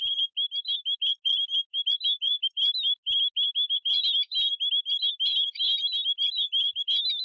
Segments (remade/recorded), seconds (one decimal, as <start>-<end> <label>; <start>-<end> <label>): 0.0-7.2 recorded